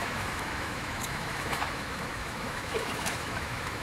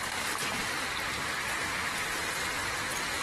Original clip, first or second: second